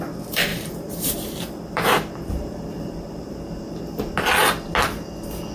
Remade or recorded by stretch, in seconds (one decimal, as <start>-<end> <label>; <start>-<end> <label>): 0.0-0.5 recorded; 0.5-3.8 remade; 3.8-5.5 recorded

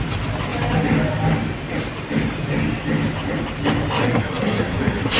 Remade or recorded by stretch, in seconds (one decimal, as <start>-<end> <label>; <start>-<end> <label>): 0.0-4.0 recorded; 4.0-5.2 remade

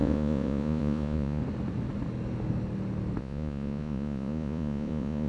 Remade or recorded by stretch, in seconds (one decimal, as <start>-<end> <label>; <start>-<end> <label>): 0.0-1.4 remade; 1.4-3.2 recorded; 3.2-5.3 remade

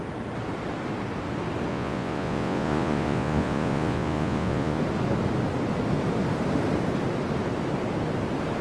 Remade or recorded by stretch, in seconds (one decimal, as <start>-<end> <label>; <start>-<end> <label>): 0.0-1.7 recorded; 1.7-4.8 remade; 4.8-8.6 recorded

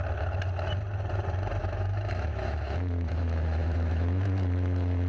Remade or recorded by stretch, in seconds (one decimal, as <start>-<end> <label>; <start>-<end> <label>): 0.0-1.6 recorded; 1.6-5.1 remade

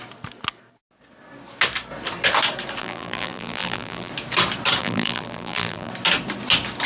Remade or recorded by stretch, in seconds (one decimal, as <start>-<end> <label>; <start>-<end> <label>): 0.0-2.8 recorded; 2.8-4.1 remade; 4.1-4.8 recorded; 4.8-5.9 remade; 5.9-6.9 recorded